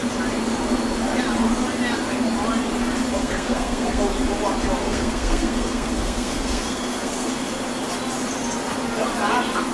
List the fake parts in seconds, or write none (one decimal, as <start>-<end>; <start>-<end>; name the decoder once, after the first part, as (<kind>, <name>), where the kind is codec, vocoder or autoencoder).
3.2-4.0 (codec, SNAC); 4.8-7.3